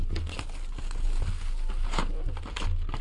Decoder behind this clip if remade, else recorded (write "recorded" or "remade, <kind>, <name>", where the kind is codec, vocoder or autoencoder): recorded